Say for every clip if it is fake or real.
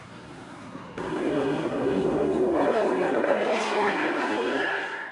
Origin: fake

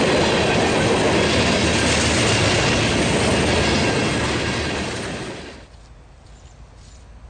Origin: real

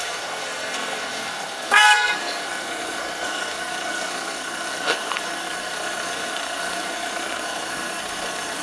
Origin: fake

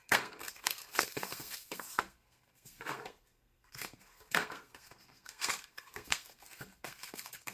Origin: fake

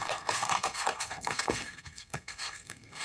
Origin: fake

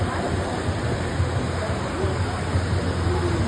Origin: real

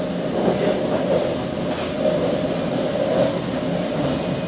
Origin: real